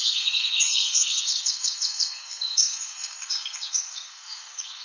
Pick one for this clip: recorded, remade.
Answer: remade